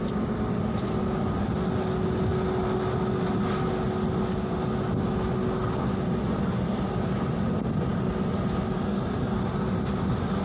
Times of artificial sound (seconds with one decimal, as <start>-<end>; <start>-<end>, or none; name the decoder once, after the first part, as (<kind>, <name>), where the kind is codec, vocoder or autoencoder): none